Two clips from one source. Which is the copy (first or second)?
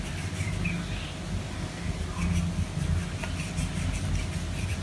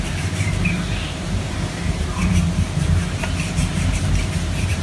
second